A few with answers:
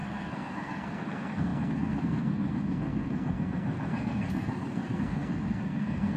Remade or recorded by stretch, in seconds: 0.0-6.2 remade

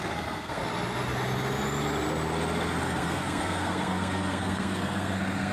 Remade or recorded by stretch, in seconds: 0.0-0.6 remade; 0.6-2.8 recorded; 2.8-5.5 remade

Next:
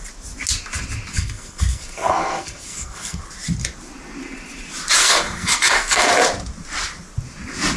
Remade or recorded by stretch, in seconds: 0.0-1.1 recorded; 1.1-3.2 remade; 3.2-5.0 recorded; 5.0-6.1 remade; 6.1-7.8 recorded